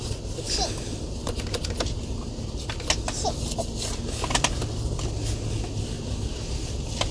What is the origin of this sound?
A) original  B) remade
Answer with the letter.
A